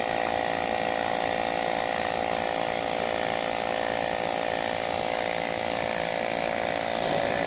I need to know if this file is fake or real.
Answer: real